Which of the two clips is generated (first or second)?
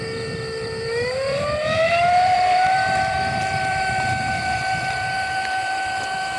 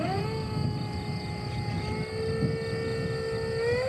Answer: first